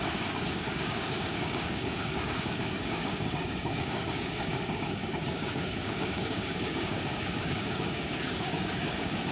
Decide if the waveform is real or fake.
fake